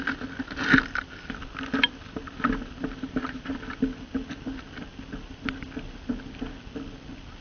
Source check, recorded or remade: recorded